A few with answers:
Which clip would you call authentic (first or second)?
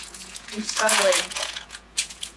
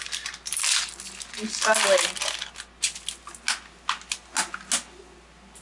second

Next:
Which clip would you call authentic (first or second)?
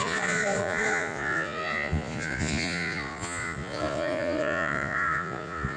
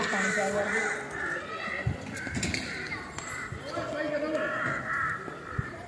second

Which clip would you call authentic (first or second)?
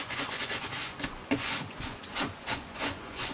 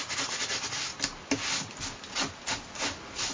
second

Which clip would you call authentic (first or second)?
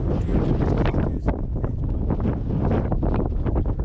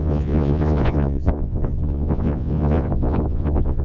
first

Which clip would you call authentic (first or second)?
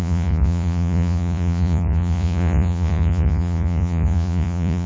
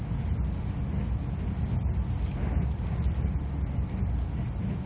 second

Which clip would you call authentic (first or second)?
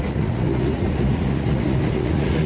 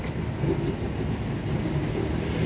second